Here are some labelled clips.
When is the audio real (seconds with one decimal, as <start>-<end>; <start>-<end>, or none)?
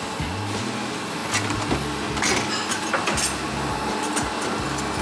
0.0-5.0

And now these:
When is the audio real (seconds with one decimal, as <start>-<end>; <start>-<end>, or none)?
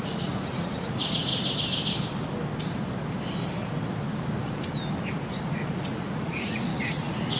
1.3-5.2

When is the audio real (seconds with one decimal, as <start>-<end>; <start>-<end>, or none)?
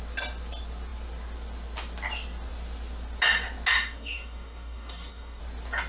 0.0-3.7; 5.4-5.9